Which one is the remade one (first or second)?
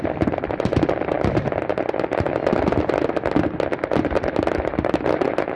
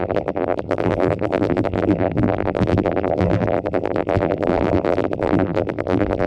second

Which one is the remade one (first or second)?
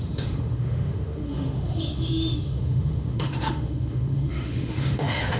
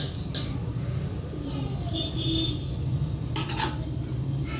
first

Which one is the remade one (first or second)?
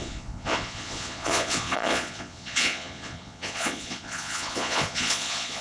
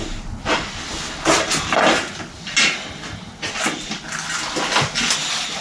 first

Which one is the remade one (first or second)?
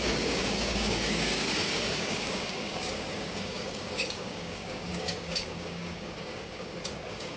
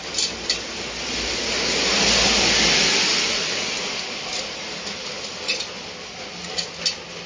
first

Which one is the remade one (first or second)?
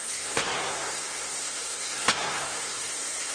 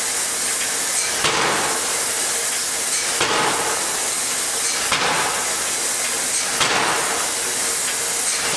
first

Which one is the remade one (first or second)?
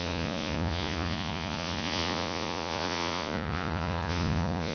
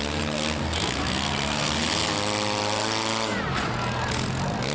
first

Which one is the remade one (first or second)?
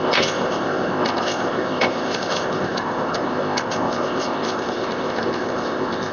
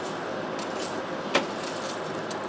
first